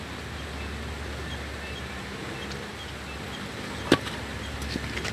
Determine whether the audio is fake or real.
real